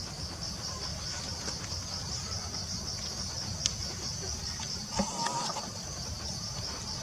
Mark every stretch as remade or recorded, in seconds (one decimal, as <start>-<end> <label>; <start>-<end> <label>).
0.0-0.9 recorded; 0.9-1.4 remade; 1.4-5.3 recorded; 5.3-6.6 remade; 6.6-7.0 recorded